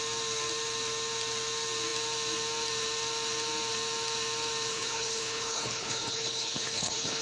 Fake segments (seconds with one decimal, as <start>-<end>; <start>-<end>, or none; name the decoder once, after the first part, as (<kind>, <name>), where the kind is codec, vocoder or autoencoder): 4.7-7.2 (codec, HILCodec)